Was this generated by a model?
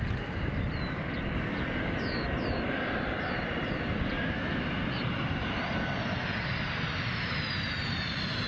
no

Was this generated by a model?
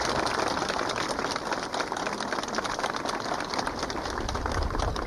no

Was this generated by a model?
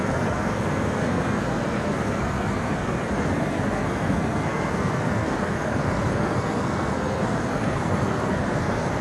yes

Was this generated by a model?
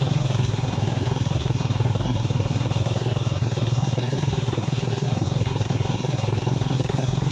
yes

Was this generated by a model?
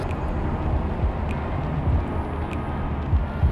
no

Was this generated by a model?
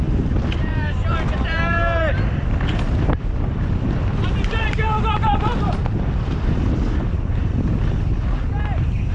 no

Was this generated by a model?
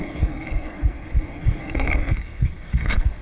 yes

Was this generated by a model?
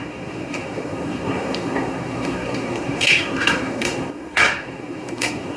yes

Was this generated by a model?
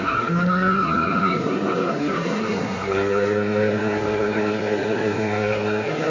yes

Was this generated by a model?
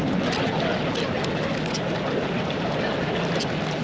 no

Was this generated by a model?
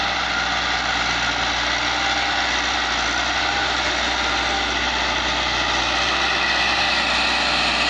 no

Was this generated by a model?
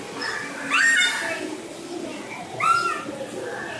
no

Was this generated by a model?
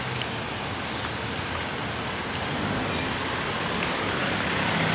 no